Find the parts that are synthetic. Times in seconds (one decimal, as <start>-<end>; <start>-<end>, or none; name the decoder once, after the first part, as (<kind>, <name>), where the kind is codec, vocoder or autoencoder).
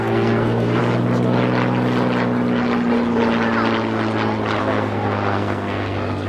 0.0-0.8 (codec, SNAC); 4.6-6.3